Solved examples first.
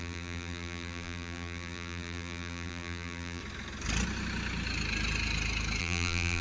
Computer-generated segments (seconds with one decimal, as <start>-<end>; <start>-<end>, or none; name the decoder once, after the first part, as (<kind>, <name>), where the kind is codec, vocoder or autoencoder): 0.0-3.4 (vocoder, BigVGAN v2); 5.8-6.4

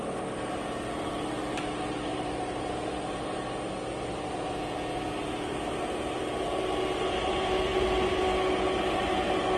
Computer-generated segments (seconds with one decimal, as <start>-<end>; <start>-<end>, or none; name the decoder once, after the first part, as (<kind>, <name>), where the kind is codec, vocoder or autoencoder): none

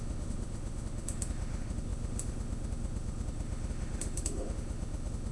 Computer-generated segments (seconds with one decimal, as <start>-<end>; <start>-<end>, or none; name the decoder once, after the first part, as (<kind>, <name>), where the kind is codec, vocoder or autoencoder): 0.0-5.3 (autoencoder, DAC-VAE)